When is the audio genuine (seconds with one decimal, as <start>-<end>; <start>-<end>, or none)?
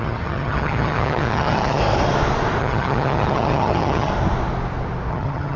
1.8-2.6; 4.1-5.1